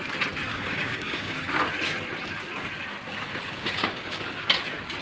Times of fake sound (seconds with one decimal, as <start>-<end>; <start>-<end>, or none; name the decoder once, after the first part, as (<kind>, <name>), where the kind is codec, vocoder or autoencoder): 0.5-1.5 (codec, DAC); 3.1-4.5